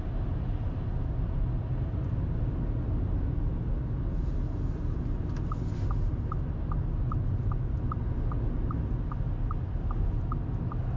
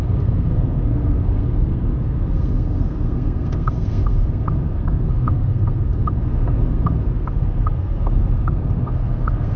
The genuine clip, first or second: first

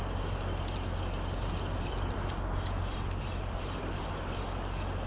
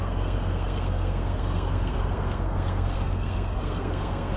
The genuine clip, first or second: first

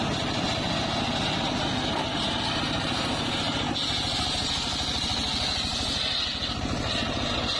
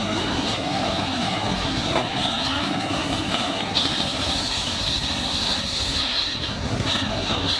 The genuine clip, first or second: first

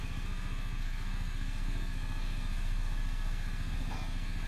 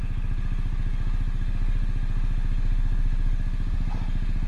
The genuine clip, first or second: second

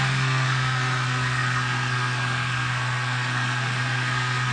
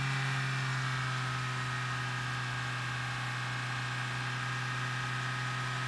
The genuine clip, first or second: second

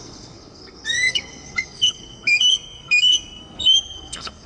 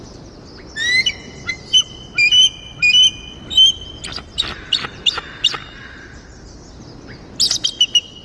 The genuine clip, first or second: second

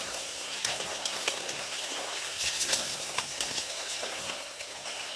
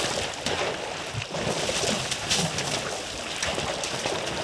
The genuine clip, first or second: second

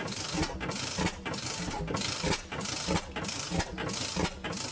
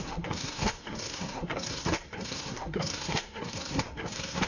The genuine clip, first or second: first